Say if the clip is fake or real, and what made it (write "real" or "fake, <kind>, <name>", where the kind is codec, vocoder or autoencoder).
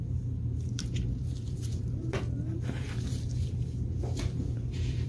fake, vocoder, BigVGAN v2